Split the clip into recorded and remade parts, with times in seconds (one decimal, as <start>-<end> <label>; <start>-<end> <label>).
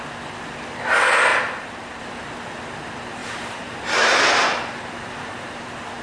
0.0-1.3 recorded; 1.3-2.0 remade; 2.0-3.2 recorded; 3.2-5.6 remade; 5.6-6.0 recorded